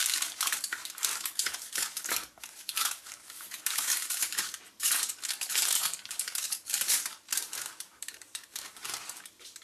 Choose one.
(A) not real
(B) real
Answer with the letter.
A